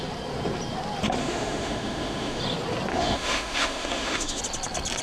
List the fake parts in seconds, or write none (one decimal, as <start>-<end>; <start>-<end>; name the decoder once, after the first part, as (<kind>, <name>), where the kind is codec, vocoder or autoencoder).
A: 1.2-2.4 (autoencoder, DAC-VAE); 2.9-4.4